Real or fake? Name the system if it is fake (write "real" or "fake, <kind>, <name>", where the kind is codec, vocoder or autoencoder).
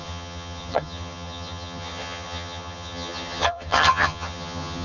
fake, vocoder, HiFi-GAN